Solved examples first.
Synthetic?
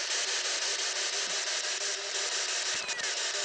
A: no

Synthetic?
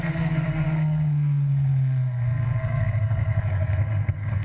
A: yes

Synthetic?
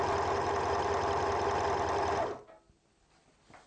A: no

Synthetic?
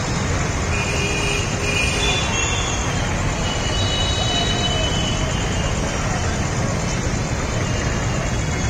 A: no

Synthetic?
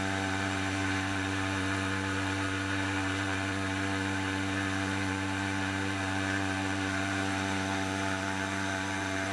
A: yes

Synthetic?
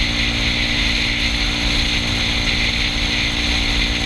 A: no